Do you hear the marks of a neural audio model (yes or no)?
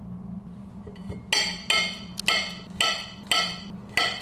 no